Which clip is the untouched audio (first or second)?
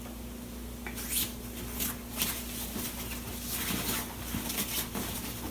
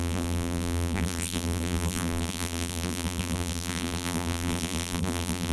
first